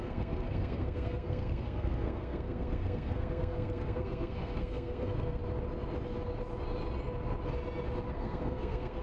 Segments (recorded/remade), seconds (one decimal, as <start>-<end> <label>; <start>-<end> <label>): 0.0-5.4 remade; 5.4-8.1 recorded; 8.1-9.0 remade